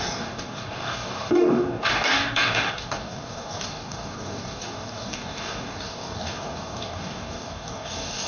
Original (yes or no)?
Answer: no